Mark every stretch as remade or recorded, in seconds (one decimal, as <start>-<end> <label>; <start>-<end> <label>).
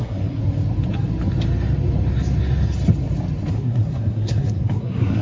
0.0-0.4 remade; 0.4-3.5 recorded; 3.5-5.2 remade